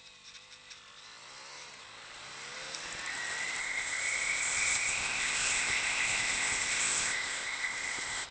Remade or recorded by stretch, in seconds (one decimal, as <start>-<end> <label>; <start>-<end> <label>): 0.0-3.6 recorded; 3.6-8.3 remade